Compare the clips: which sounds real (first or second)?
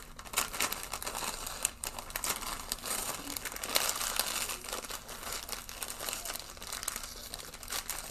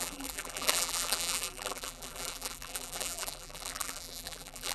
first